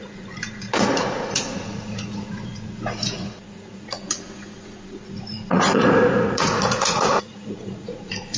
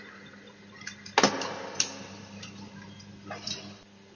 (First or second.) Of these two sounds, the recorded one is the second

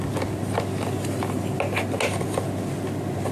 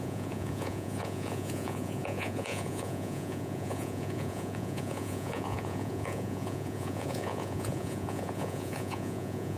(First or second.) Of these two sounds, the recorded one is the first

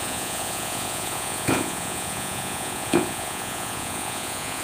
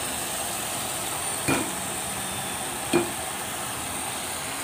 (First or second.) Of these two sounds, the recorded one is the second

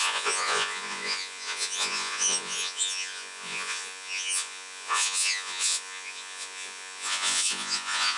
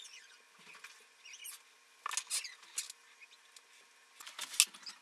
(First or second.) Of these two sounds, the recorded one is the second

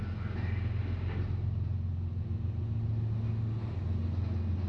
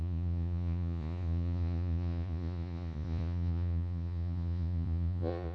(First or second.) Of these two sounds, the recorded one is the first